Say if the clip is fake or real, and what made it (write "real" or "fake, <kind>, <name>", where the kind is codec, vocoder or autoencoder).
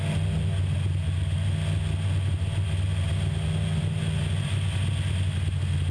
real